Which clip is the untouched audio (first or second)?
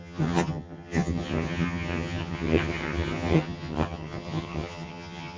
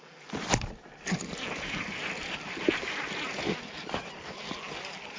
second